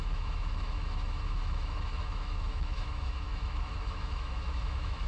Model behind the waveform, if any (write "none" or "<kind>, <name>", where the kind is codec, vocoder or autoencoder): autoencoder, DAC-VAE